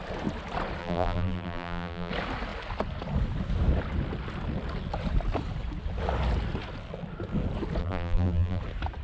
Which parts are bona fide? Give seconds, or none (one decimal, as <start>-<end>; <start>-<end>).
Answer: 0.0-0.8; 2.1-7.8; 8.6-9.0